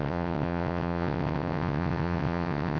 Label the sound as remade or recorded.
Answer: remade